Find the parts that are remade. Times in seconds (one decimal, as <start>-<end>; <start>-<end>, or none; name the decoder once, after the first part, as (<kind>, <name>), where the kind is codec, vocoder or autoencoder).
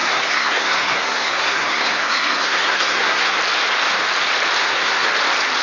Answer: 0.0-3.4 (codec, SNAC); 4.6-5.1